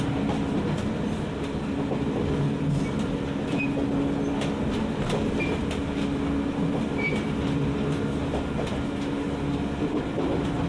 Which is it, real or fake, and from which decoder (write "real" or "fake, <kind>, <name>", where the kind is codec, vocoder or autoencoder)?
real